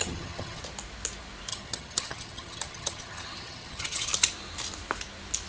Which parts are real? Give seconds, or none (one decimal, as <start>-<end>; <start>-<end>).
0.6-1.5; 4.1-5.5